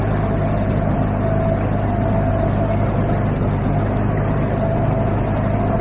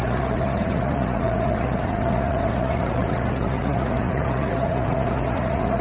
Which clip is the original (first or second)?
first